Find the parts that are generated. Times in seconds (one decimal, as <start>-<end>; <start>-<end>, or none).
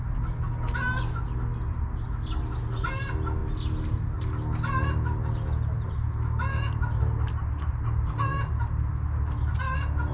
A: none